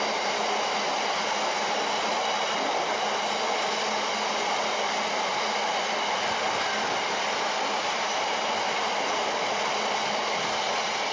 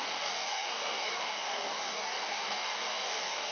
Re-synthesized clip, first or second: second